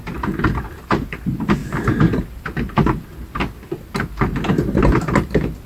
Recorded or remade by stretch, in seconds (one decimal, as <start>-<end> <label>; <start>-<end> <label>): 0.0-5.7 recorded